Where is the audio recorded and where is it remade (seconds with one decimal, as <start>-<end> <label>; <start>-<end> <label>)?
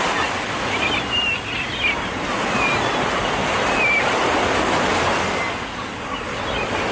0.0-6.9 recorded